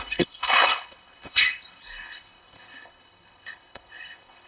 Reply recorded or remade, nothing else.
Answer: remade